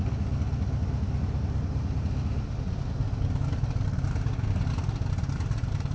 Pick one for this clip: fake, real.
real